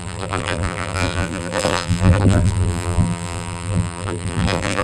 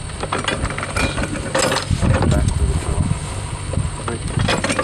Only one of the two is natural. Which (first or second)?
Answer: second